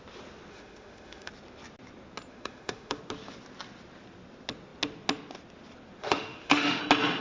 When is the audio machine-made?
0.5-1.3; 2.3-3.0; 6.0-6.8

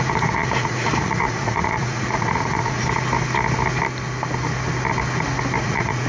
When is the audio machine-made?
0.0-2.8; 5.6-6.1

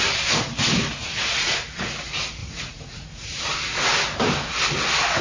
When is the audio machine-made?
1.0-1.8; 2.4-3.4

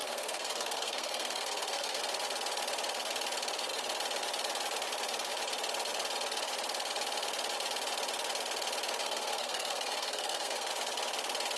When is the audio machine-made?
0.0-2.0; 9.0-10.7

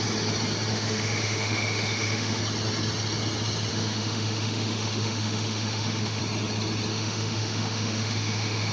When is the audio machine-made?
0.7-2.4; 3.7-6.2; 6.9-8.7

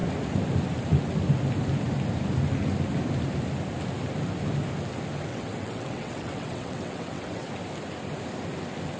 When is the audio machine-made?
5.3-7.5

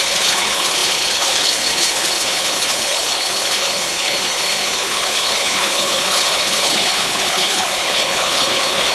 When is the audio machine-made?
0.0-8.9